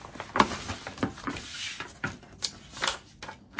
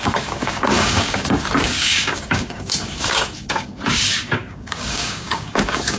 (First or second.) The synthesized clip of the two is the second